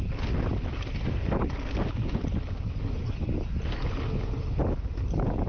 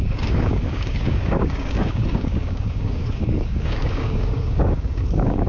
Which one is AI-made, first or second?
second